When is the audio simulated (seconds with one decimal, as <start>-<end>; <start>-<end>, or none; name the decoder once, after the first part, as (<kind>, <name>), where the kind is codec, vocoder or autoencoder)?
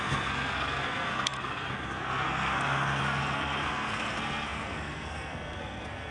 0.0-6.1 (codec, SNAC)